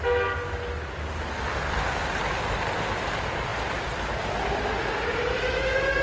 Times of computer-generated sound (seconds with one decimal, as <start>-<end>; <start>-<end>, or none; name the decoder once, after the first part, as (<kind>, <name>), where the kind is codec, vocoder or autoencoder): none